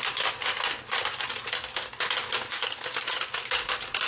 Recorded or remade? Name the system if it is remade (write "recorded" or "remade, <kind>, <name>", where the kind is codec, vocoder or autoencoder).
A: recorded